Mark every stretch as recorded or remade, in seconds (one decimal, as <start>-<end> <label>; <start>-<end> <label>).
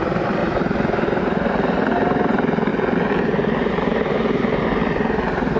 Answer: 0.0-0.4 remade; 0.4-1.2 recorded; 1.2-2.7 remade; 2.7-3.7 recorded; 3.7-5.6 remade